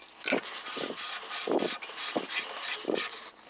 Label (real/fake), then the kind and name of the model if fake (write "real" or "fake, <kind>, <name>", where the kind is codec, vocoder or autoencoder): real